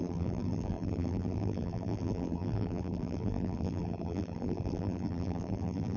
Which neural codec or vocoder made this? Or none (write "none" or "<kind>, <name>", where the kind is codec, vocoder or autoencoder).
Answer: vocoder, BigVGAN v2